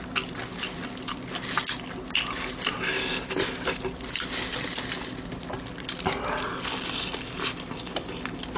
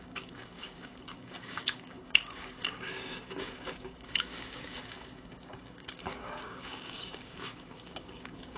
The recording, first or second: first